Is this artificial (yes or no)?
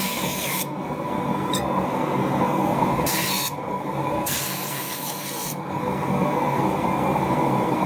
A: yes